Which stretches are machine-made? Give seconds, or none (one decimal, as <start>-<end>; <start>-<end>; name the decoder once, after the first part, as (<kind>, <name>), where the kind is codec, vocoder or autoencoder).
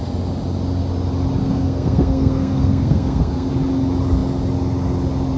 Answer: 1.4-3.5 (codec, SNAC)